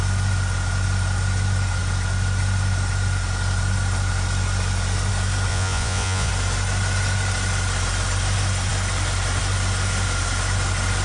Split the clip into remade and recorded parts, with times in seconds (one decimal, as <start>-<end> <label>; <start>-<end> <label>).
0.0-5.5 recorded; 5.5-6.3 remade; 6.3-11.0 recorded